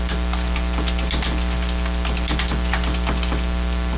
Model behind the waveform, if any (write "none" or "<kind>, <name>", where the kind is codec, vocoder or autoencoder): none